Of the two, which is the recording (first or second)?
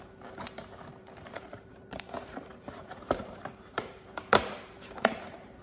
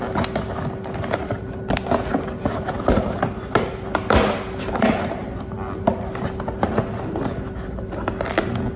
second